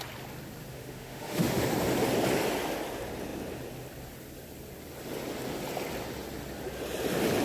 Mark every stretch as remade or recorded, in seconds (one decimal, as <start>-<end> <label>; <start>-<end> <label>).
0.0-0.7 recorded; 0.7-1.6 remade; 1.6-7.4 recorded